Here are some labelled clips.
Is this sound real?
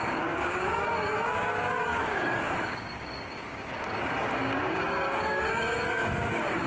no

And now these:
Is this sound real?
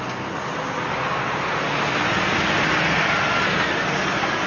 yes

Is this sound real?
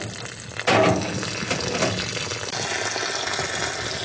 yes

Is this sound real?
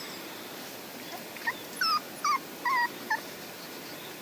yes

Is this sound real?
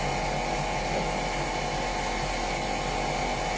yes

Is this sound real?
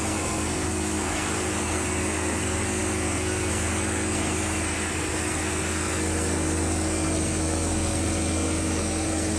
no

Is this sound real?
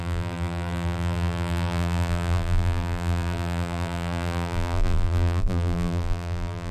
no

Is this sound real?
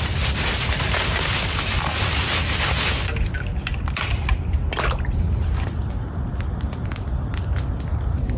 yes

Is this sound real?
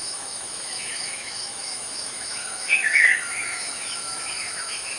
no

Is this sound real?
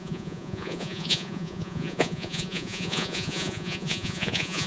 no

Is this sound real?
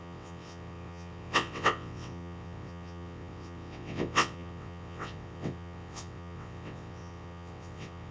no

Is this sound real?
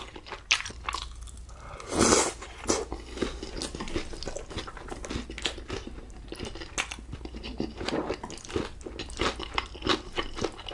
yes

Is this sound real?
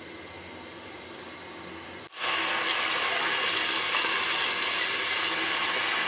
yes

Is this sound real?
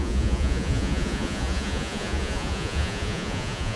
no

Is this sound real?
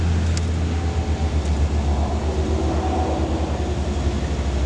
yes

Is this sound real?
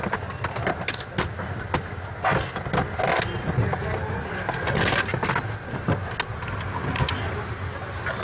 yes